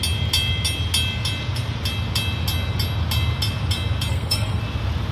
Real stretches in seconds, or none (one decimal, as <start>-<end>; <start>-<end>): 0.0-4.1; 4.6-5.1